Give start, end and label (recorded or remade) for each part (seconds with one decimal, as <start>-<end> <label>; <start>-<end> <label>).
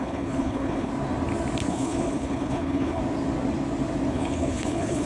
0.0-0.9 remade; 0.9-1.7 recorded; 1.7-3.0 remade; 3.0-4.1 recorded; 4.1-5.1 remade